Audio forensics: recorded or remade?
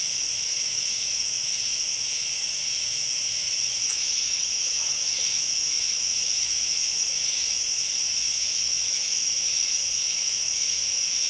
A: remade